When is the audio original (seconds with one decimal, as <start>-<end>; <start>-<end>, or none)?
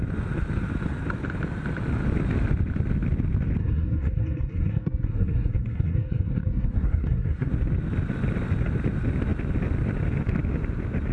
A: 0.0-3.6; 7.5-11.1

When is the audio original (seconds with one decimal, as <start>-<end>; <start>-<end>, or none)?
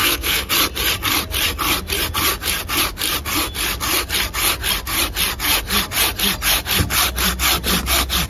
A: 0.5-8.3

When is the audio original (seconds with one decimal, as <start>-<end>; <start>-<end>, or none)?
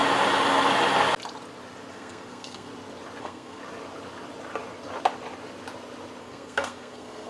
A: 0.0-1.9; 2.7-3.2; 3.6-6.2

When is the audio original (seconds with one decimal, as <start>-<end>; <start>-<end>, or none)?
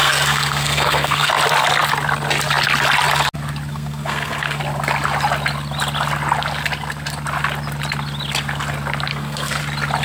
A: 1.3-3.7; 4.6-9.1; 9.6-10.0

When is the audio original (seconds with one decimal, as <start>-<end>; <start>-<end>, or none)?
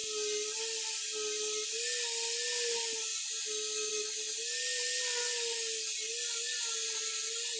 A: 0.0-7.6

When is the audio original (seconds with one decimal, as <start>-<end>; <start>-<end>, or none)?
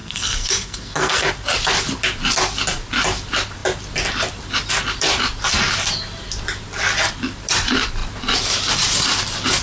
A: 1.3-9.6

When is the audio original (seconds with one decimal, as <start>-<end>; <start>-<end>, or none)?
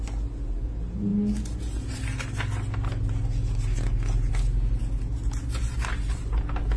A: 0.0-6.8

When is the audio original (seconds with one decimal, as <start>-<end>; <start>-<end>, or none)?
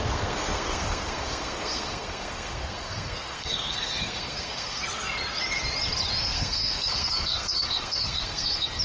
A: 4.8-6.2